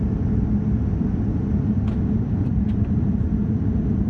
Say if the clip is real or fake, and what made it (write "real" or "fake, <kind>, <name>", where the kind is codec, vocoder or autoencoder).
fake, vocoder, BigVGAN v2